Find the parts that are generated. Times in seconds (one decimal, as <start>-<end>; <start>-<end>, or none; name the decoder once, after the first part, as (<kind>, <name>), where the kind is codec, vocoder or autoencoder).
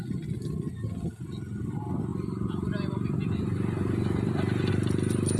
none